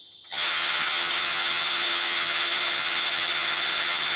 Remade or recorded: remade